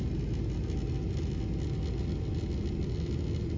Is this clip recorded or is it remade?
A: recorded